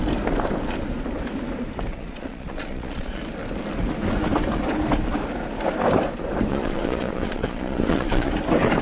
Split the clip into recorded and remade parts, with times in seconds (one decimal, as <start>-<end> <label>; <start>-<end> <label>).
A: 0.0-1.9 recorded; 1.9-3.2 remade; 3.2-6.5 recorded; 6.5-8.3 remade; 8.3-8.8 recorded